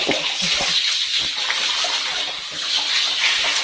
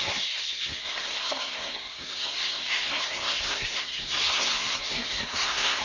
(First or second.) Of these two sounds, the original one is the first